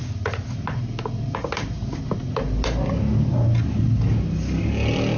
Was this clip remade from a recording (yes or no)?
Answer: no